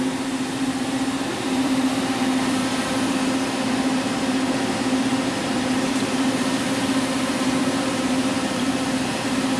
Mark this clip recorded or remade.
remade